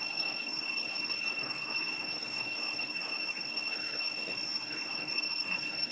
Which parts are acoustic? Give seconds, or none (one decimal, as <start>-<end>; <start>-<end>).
none